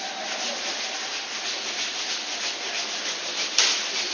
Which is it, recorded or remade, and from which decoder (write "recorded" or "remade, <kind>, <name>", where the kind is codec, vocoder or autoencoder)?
recorded